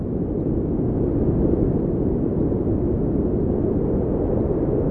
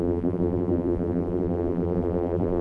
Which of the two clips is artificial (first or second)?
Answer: second